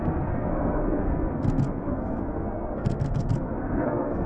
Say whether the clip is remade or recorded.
remade